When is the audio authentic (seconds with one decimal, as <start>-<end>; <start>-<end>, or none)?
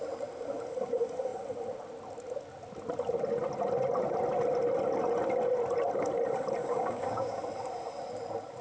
0.0-6.6; 7.4-8.6